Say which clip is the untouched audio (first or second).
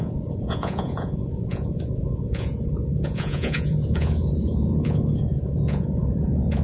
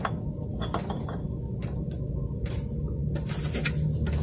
second